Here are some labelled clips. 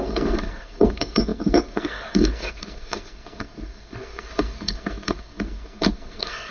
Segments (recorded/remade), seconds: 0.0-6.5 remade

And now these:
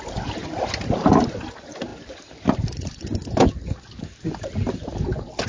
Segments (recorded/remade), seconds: 0.0-5.5 recorded

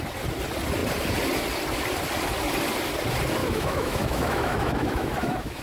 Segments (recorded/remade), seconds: 0.0-3.4 recorded; 3.4-5.6 remade

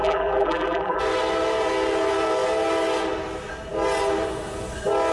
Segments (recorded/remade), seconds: 0.0-1.0 remade; 1.0-5.1 recorded

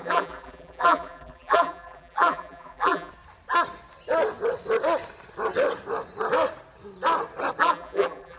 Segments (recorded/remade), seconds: 0.0-3.1 remade; 3.1-7.6 recorded; 7.6-8.4 remade